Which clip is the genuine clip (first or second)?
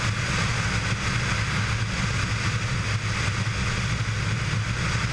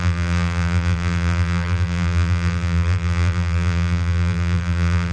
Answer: first